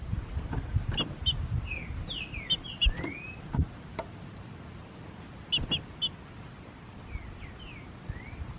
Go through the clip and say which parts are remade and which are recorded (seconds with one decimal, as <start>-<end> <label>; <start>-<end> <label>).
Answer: 0.0-8.6 recorded